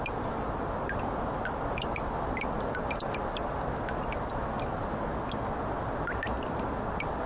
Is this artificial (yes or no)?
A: no